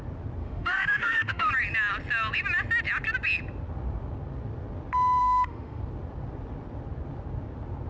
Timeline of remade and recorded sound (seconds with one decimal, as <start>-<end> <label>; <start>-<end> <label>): 0.0-0.4 recorded; 0.4-1.5 remade; 1.5-5.2 recorded; 5.2-5.8 remade; 5.8-7.9 recorded